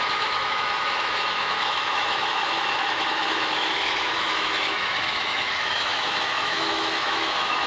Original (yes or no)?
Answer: no